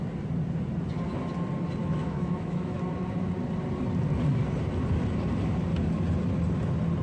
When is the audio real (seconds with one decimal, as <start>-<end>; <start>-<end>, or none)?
0.0-1.8; 2.8-7.0